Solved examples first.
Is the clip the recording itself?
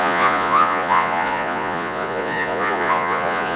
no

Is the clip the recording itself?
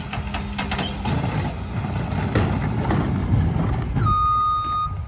yes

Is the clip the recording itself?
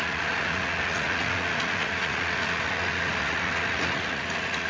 no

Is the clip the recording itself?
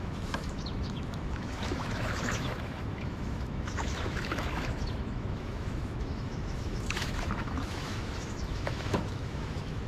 no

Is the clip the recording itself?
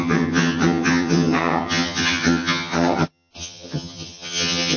no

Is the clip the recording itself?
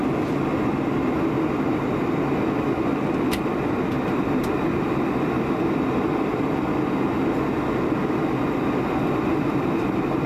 yes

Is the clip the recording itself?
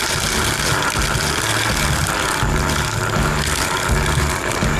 yes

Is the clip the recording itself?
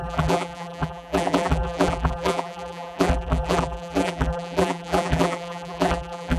no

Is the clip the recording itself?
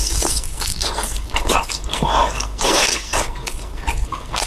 no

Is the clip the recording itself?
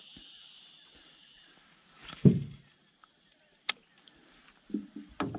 yes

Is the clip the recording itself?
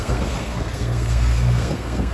no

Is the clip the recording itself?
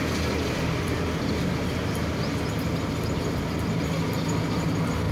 yes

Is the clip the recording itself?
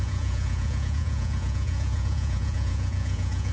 no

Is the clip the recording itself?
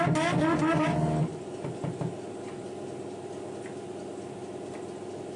yes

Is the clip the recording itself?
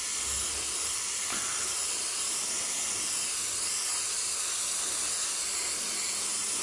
yes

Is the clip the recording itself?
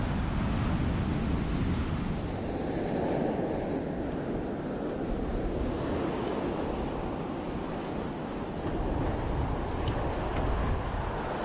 yes